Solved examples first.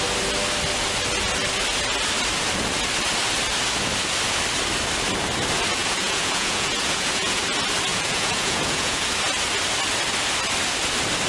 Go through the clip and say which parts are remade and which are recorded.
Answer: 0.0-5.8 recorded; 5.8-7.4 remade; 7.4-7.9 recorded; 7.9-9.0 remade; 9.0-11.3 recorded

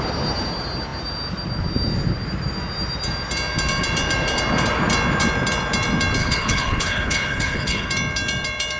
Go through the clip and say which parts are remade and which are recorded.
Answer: 0.0-6.2 recorded; 6.2-7.9 remade; 7.9-8.8 recorded

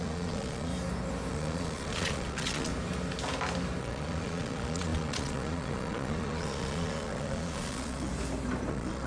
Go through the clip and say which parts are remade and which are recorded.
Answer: 0.0-0.7 remade; 0.7-1.3 recorded; 1.3-2.7 remade; 2.7-3.8 recorded; 3.8-8.1 remade; 8.1-8.7 recorded; 8.7-9.1 remade

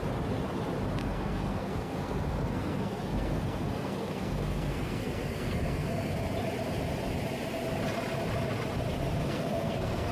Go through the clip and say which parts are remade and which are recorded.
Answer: 0.0-1.0 recorded; 1.0-6.1 remade; 6.1-9.2 recorded; 9.2-10.1 remade

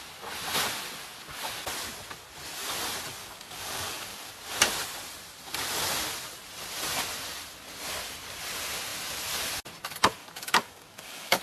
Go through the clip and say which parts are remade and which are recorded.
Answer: 0.0-3.2 recorded; 3.2-4.3 remade; 4.3-10.2 recorded; 10.2-11.4 remade

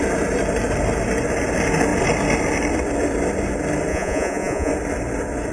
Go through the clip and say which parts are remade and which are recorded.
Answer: 0.0-3.9 recorded; 3.9-4.7 remade; 4.7-5.5 recorded